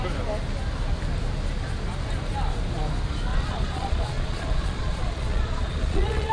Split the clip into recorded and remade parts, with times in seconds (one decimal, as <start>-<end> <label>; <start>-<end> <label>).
0.0-3.3 recorded; 3.3-6.3 remade